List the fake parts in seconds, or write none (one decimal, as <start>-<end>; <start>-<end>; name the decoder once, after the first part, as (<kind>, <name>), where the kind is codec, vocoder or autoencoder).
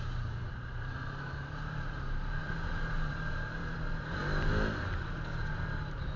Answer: 0.0-4.2 (vocoder, BigVGAN v2); 5.5-6.2